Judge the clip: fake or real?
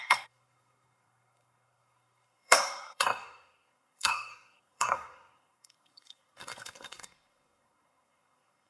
fake